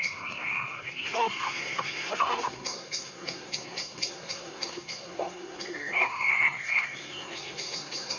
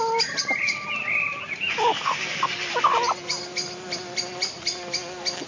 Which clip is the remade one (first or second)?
first